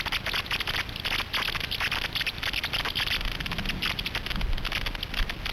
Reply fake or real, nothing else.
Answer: real